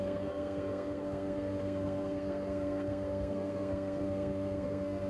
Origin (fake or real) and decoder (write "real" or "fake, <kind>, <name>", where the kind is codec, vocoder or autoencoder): fake, codec, SNAC